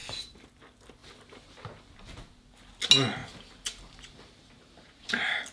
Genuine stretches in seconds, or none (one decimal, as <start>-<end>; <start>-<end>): 0.5-3.2; 5.0-5.5